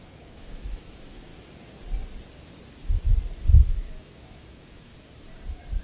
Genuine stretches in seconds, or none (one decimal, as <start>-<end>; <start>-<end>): 1.3-3.7; 4.9-5.8